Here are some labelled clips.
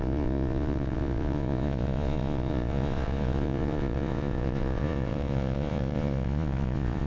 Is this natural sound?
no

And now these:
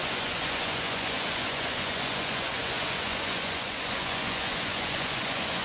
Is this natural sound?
no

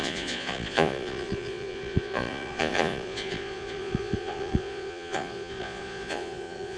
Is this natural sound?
no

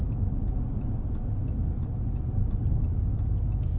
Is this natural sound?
yes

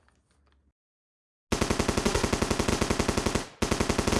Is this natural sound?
yes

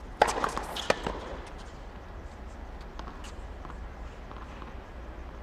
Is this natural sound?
yes